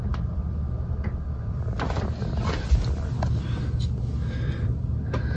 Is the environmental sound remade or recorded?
recorded